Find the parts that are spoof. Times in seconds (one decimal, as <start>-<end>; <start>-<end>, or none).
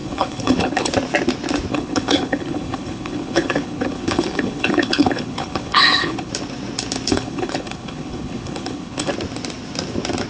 0.0-0.9; 1.7-6.3; 7.1-9.1